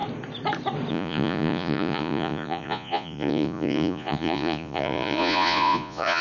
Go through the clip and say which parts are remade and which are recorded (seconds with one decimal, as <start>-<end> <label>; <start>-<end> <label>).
0.0-0.9 recorded; 0.9-6.2 remade

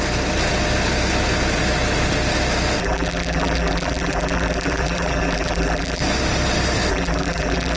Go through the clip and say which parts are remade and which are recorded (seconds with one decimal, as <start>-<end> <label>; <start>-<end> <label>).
0.0-2.8 recorded; 2.8-6.0 remade; 6.0-6.9 recorded; 6.9-7.8 remade